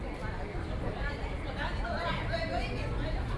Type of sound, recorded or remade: remade